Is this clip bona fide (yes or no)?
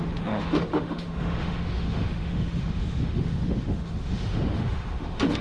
no